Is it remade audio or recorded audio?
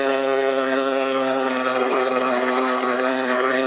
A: remade